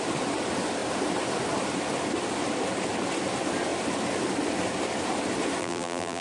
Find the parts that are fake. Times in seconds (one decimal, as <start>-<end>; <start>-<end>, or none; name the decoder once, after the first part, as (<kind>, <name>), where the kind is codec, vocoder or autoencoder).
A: 5.6-6.2 (vocoder, BigVGAN v2)